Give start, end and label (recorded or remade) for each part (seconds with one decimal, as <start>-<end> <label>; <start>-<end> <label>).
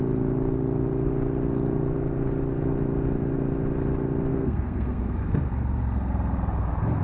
0.0-4.3 recorded; 4.3-5.5 remade; 5.5-7.0 recorded